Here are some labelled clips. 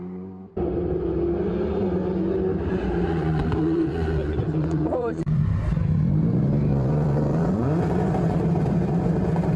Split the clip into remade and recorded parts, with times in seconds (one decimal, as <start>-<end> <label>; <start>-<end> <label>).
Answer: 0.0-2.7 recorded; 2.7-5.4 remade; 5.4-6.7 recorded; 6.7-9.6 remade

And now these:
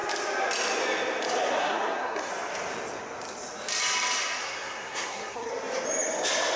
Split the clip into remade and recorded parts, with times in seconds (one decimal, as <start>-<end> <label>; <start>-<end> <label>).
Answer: 0.0-1.6 recorded; 1.6-2.3 remade; 2.3-4.4 recorded; 4.4-5.5 remade; 5.5-6.6 recorded

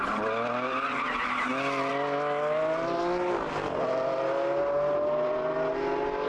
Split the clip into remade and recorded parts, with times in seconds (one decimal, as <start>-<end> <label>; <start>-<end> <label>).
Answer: 0.0-6.3 recorded

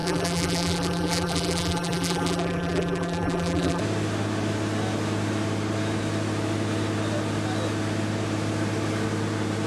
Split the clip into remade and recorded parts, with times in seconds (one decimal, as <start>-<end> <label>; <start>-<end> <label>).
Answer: 0.0-3.8 remade; 3.8-9.7 recorded

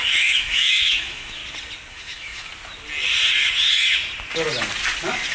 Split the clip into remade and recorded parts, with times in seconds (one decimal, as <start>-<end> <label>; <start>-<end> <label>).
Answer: 0.0-1.4 remade; 1.4-1.9 recorded; 1.9-2.5 remade; 2.5-5.3 recorded

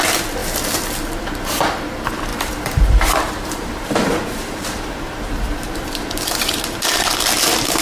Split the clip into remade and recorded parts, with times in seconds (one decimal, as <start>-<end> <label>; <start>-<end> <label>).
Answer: 0.0-2.3 recorded; 2.3-6.6 remade; 6.6-7.8 recorded

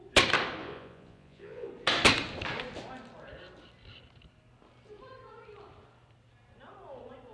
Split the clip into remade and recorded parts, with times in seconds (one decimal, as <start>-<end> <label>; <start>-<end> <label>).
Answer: 0.0-0.6 recorded; 0.6-1.7 remade; 1.7-7.3 recorded

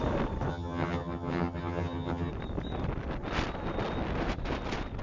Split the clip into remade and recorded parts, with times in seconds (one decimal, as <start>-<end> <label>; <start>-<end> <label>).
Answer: 0.0-0.5 recorded; 0.5-2.3 remade; 2.3-5.0 recorded